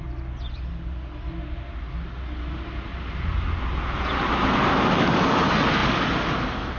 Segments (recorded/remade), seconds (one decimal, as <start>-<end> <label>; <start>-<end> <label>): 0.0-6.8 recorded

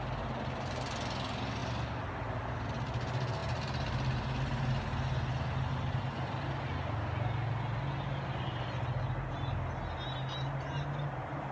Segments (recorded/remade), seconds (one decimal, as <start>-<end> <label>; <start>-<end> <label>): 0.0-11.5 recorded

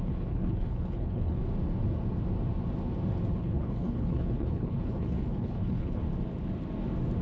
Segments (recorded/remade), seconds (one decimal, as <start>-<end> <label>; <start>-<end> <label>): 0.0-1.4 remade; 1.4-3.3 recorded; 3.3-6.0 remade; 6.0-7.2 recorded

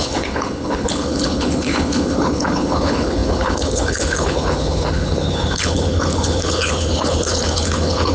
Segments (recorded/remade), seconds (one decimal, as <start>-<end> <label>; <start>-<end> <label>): 0.0-8.1 remade

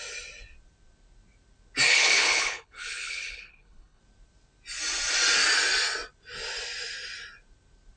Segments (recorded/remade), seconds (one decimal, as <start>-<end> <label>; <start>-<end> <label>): 0.0-1.9 recorded; 1.9-4.0 remade; 4.0-8.0 recorded

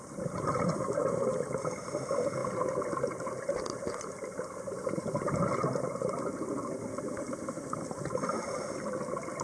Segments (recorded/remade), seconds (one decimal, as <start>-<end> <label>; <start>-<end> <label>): 0.0-9.4 recorded

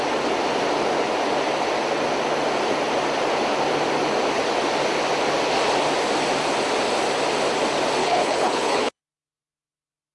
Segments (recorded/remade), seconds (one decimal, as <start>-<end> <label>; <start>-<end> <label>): 0.0-8.0 recorded; 8.0-9.0 remade; 9.0-10.1 recorded

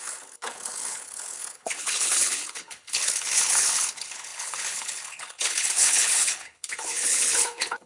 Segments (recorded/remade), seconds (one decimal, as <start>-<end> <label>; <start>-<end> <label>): 0.0-7.9 remade